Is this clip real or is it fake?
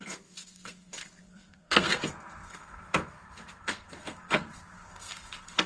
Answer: fake